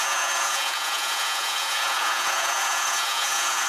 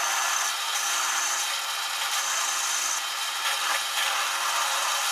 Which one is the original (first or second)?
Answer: second